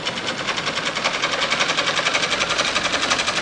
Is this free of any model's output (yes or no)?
yes